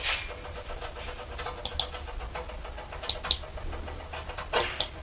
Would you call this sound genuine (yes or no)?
yes